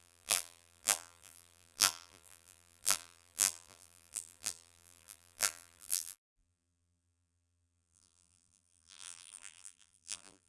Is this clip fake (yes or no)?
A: yes